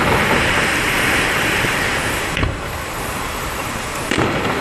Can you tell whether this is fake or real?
fake